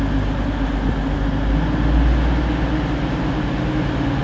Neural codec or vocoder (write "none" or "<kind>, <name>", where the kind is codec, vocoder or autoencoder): none